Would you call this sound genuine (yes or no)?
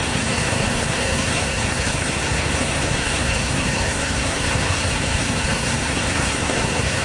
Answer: no